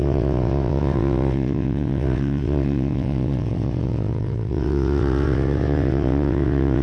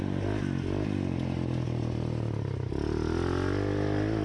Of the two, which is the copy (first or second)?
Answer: first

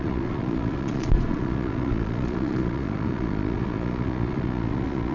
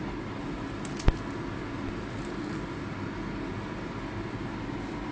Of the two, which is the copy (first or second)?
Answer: first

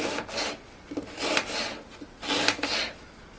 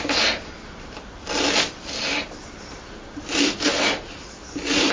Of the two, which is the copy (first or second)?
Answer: second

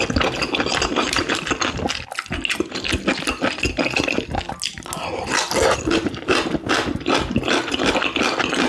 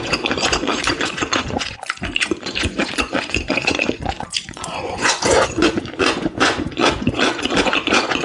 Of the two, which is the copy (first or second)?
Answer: second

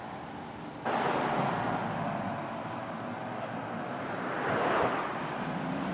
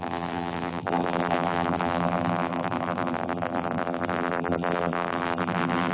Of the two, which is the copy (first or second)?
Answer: second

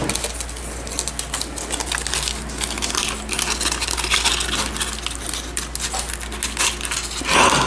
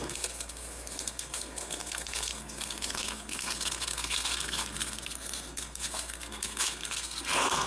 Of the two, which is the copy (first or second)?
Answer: second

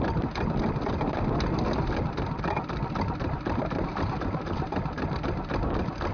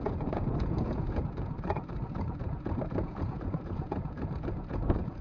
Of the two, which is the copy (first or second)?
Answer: second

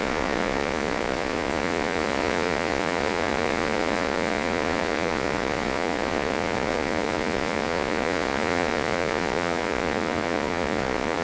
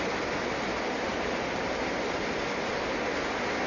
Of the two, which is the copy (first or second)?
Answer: first